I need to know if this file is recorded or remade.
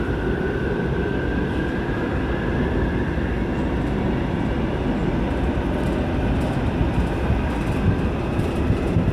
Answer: recorded